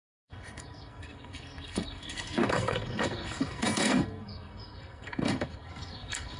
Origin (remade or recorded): remade